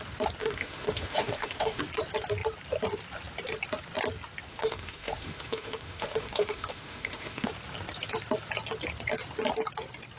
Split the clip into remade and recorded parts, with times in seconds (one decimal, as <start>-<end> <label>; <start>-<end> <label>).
0.0-0.4 recorded; 0.4-1.8 remade; 1.8-4.5 recorded; 4.5-7.5 remade; 7.5-10.2 recorded